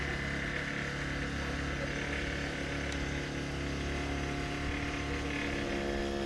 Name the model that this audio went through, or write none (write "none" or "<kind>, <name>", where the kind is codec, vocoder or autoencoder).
none